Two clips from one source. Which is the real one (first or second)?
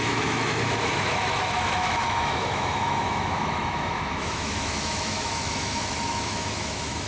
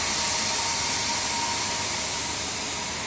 second